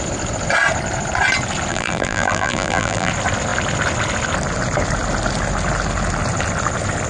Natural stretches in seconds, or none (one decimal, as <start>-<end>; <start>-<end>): 0.0-1.7; 3.1-7.1

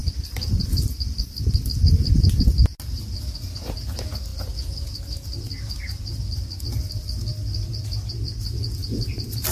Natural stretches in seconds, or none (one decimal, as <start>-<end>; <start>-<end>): 0.0-9.5